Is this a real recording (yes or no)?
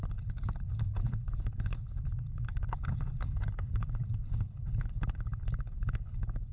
no